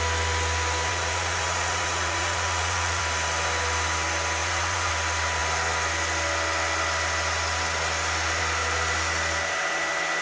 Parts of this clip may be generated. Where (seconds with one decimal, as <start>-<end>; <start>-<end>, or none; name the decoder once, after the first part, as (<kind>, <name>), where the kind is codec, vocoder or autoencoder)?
0.9-3.0 (vocoder, Vocos); 4.4-4.9